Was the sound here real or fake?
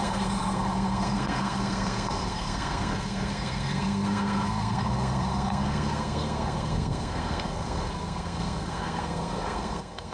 fake